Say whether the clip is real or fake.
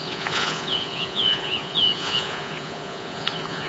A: fake